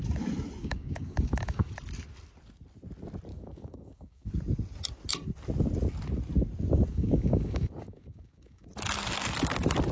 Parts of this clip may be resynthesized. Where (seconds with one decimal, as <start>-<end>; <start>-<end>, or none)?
0.6-1.7; 3.3-4.3; 6.9-8.7